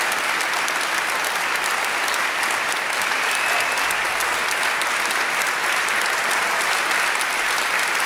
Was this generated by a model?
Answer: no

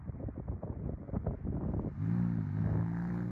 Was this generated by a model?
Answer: no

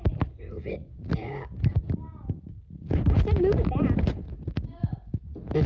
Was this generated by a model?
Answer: no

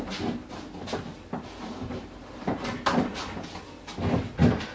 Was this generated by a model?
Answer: no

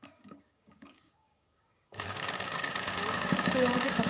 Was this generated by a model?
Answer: yes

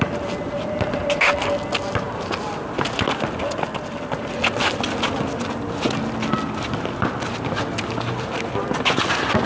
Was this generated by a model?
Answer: no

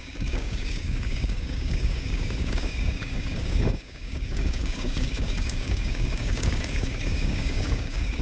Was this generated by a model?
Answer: yes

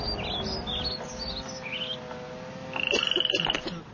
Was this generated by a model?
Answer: no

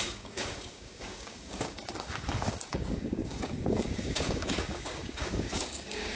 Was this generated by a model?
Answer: yes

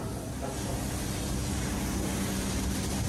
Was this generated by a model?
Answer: no